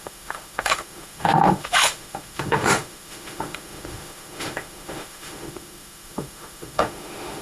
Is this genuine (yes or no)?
no